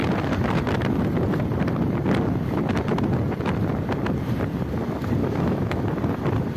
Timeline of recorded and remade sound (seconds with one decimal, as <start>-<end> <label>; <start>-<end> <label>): 0.0-5.2 recorded; 5.2-5.8 remade; 5.8-6.6 recorded